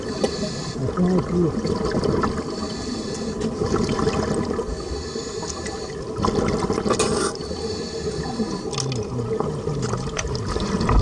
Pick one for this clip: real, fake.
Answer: real